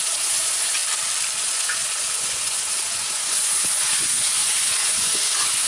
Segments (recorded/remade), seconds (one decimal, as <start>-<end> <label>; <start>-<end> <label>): 0.0-0.8 remade; 0.8-1.4 recorded; 1.4-5.7 remade